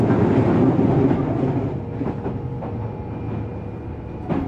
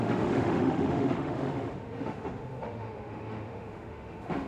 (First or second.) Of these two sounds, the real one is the first